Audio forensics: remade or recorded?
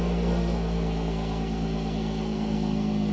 remade